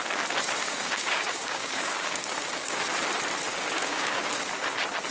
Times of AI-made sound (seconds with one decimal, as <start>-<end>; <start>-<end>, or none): 0.6-2.8; 3.5-4.3